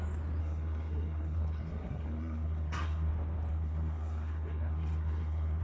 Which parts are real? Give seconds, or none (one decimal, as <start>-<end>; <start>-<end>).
0.0-0.4; 3.1-3.5